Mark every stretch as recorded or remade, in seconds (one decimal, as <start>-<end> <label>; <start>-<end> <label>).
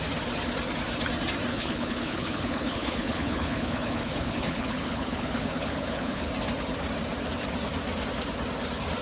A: 0.0-1.5 recorded; 1.5-6.3 remade; 6.3-9.0 recorded